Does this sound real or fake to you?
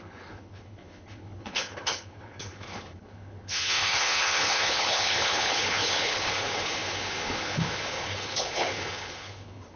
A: fake